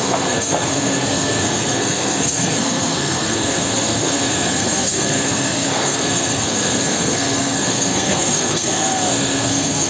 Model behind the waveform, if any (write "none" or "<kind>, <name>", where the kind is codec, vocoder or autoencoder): codec, SNAC